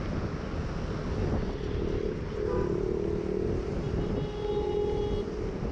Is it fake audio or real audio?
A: real